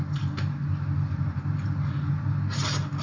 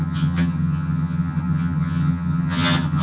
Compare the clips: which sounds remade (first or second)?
second